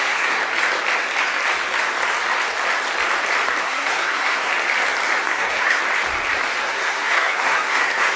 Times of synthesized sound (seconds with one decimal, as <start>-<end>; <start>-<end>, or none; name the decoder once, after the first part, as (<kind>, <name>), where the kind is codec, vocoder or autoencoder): 0.0-0.4 (codec, SNAC); 3.6-4.5; 5.2-5.8; 6.6-8.2

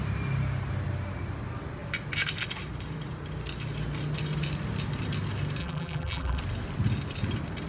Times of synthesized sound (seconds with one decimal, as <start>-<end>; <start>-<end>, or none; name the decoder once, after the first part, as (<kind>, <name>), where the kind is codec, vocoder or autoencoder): 5.6-6.4 (vocoder, BigVGAN v2)

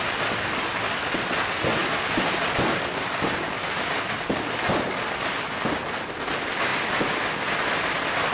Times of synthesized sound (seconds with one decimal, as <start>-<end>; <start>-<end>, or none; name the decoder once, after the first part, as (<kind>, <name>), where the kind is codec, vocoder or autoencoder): none

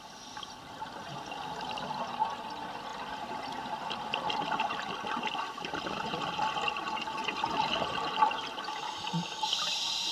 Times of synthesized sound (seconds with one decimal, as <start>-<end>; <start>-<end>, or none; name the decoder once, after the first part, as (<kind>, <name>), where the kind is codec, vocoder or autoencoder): 7.2-8.8 (vocoder, BigVGAN v2)

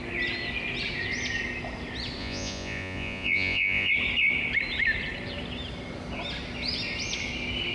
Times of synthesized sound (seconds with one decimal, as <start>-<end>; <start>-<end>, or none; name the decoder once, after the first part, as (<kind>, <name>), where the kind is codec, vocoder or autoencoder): 2.2-3.9 (vocoder, Vocos)

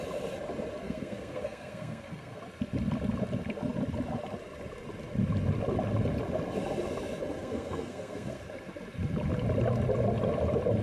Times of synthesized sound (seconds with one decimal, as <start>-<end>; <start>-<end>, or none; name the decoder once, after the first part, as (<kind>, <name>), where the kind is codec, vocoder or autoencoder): 0.8-2.4 (codec, SNAC); 7.4-8.4

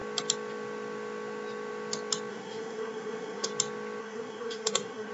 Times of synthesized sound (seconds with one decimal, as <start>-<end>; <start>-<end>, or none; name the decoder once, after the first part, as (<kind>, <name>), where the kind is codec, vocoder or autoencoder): 2.3-3.5 (codec, SNAC); 4.0-5.1